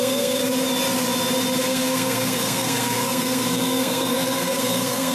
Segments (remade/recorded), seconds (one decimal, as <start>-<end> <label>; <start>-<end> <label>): 0.0-0.4 remade; 0.4-1.6 recorded; 1.6-5.1 remade